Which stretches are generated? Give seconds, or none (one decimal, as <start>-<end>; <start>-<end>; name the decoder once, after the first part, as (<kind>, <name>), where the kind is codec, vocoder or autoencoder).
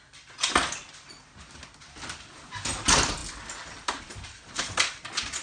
none